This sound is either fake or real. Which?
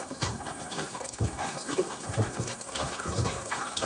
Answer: fake